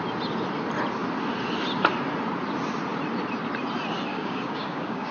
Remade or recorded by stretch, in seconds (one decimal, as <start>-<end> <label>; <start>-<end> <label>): 0.0-4.1 recorded; 4.1-5.1 remade